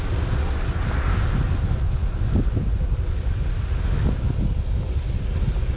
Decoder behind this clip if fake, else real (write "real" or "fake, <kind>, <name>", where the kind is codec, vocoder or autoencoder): real